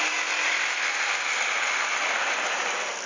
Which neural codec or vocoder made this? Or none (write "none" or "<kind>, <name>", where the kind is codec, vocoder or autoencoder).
none